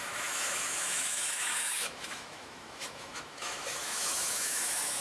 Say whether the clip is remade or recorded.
remade